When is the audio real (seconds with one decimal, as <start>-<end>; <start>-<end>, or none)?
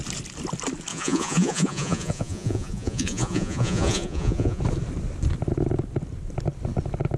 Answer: 0.0-0.9; 4.6-7.2